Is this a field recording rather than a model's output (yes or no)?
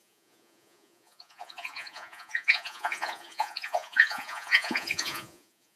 no